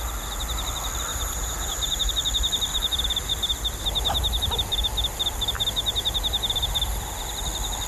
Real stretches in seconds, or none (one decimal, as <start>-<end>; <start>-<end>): 0.0-1.1; 2.1-2.7; 3.3-7.9